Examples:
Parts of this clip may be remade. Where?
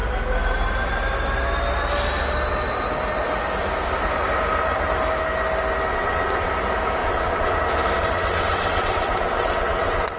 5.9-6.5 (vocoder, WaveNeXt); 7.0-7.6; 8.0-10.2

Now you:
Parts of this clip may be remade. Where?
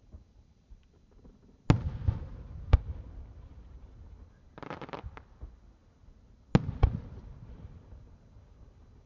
none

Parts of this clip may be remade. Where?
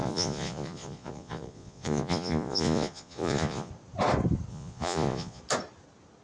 0.0-3.7 (vocoder, Vocos); 4.5-5.4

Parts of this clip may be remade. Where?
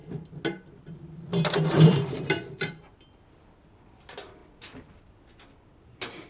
1.3-4.0 (vocoder, BigVGAN v2)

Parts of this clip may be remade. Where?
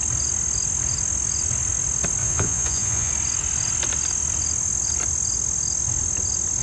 2.2-3.1 (vocoder, Vocos)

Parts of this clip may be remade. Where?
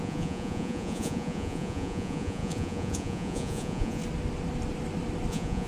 0.0-4.0 (vocoder, Vocos); 5.3-5.7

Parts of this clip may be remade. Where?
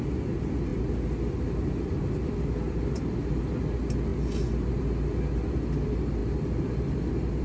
none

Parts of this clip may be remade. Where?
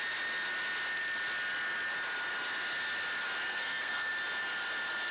3.5-4.1 (codec, SNAC)